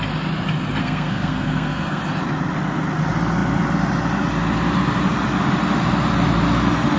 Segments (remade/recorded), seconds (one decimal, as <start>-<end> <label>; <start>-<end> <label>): 0.0-0.8 recorded; 0.8-2.0 remade; 2.0-7.0 recorded